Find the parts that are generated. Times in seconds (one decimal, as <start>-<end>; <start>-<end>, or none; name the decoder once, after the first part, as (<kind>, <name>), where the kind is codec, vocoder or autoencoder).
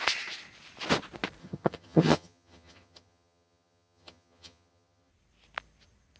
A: 1.4-5.1 (vocoder, HiFi-GAN)